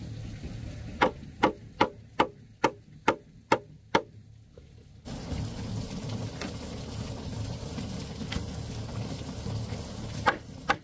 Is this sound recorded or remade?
recorded